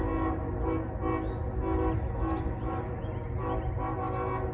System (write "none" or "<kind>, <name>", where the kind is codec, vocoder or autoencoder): none